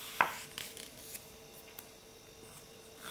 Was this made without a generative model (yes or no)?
yes